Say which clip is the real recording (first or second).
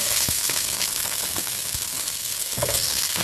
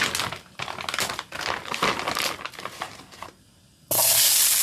second